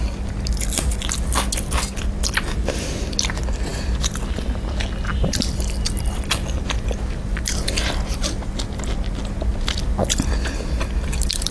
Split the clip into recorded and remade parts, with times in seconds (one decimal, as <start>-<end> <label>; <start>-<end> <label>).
0.0-11.5 recorded